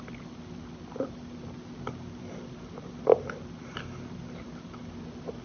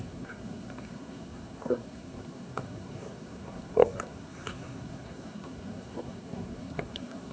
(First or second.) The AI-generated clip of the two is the second